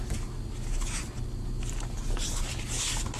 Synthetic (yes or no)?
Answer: no